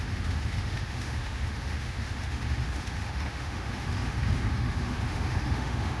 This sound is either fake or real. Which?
fake